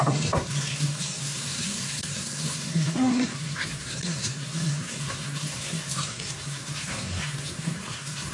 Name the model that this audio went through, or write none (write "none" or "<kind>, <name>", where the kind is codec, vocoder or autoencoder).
codec, SNAC